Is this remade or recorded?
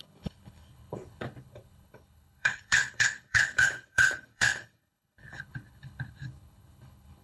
remade